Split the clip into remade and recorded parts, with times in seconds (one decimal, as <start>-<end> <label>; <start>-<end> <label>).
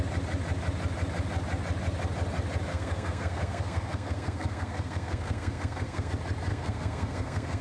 0.0-2.7 recorded; 2.7-6.1 remade; 6.1-6.5 recorded; 6.5-7.6 remade